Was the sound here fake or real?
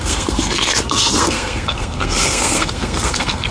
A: fake